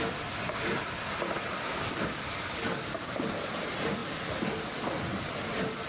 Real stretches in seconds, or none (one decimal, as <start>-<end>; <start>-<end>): 0.0-1.7; 3.4-5.9